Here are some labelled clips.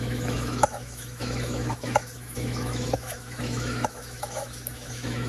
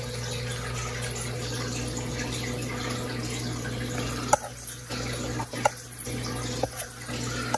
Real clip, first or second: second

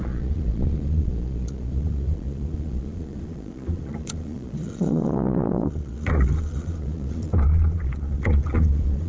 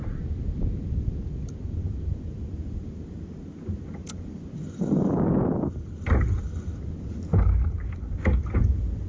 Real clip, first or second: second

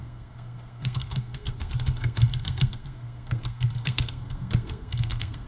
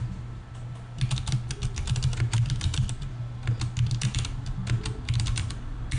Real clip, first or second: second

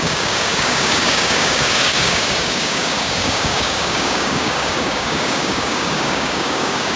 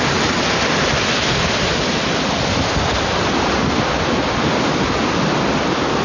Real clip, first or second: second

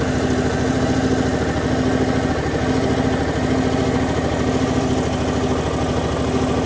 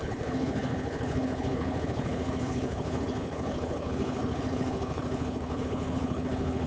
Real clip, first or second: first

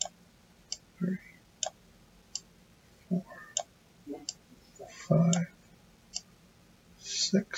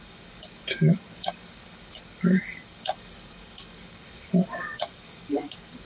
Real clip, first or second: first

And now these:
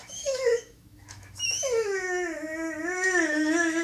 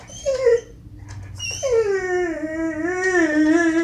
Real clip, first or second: second